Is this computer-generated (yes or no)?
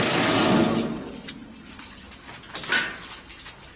no